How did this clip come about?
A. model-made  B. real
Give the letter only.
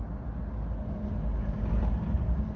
B